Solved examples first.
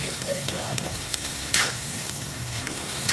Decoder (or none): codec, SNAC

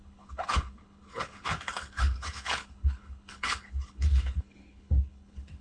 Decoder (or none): codec, HILCodec